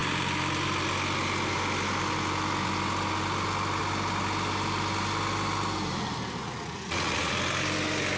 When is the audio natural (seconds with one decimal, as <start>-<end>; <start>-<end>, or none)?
0.0-6.4; 7.3-8.2